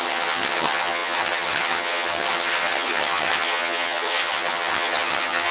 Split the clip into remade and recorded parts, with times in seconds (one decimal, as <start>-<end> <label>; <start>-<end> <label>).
0.0-5.5 remade